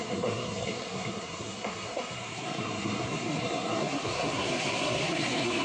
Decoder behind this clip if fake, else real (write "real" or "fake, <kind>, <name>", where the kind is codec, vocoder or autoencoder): fake, codec, SNAC